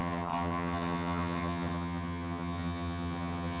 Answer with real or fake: fake